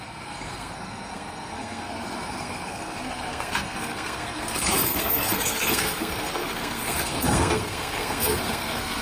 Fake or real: fake